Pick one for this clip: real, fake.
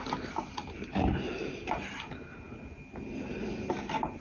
real